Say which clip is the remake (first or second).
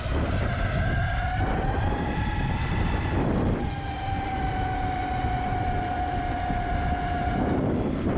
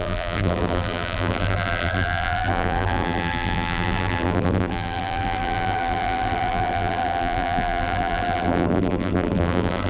second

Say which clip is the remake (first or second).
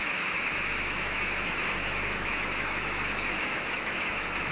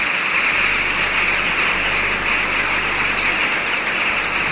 first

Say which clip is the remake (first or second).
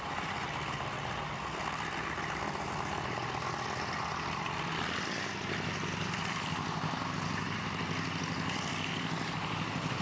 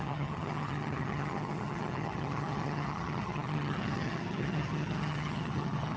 second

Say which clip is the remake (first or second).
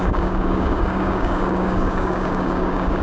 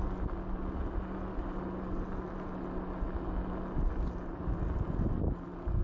first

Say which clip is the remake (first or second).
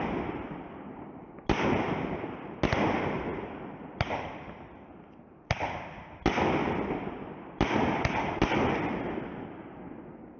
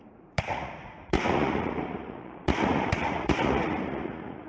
second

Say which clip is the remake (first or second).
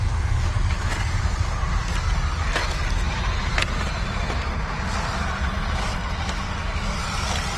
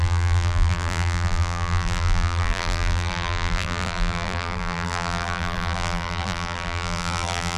second